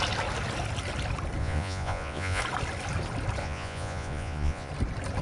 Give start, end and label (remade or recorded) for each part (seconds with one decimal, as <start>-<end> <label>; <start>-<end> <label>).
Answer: 0.0-1.4 recorded; 1.4-2.4 remade; 2.4-3.4 recorded; 3.4-4.7 remade; 4.7-5.2 recorded